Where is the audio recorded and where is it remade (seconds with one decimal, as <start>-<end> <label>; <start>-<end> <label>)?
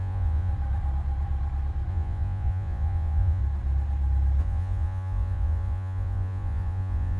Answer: 0.0-0.5 remade; 0.5-1.9 recorded; 1.9-3.4 remade; 3.4-4.4 recorded; 4.4-7.2 remade